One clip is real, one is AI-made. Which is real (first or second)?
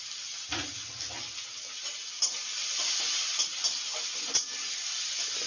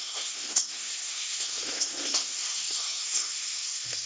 first